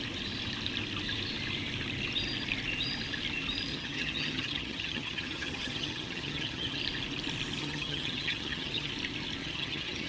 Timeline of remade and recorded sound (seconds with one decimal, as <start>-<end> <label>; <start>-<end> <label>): 0.0-3.7 recorded; 3.7-6.8 remade; 6.8-7.6 recorded; 7.6-8.9 remade; 8.9-9.4 recorded; 9.4-10.1 remade